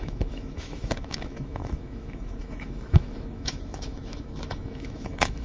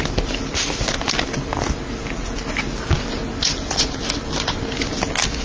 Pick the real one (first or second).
second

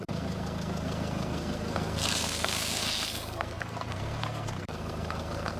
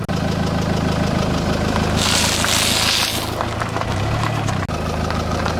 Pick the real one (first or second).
second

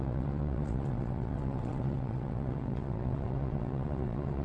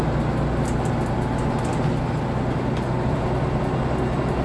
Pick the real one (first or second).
second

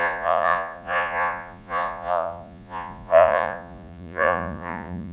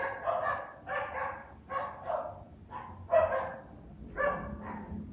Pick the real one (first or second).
second